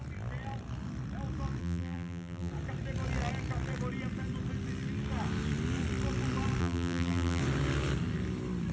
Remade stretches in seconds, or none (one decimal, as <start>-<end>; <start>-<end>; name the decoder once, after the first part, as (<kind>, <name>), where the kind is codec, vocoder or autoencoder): 1.6-2.5 (vocoder, BigVGAN v2); 6.6-7.4